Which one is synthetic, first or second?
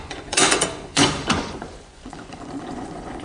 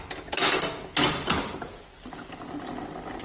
first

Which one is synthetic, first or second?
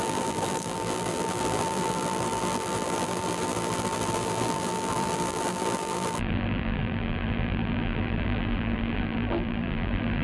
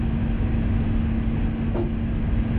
first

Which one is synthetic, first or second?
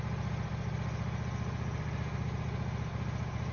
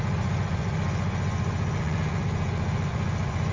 second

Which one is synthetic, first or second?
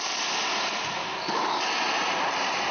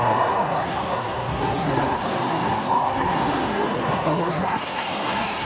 second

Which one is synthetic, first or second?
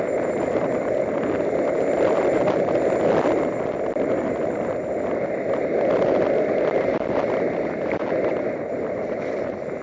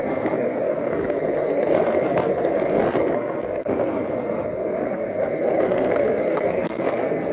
second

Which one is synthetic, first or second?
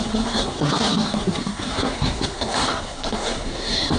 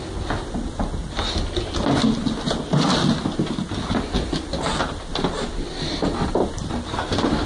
first